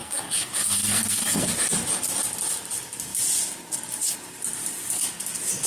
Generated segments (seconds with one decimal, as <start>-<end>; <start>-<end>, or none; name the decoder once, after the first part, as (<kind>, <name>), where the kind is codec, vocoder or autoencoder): 0.0-1.5 (codec, SNAC)